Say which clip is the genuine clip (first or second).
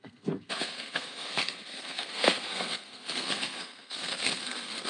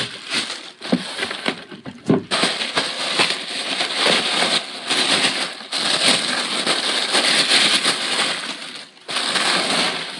second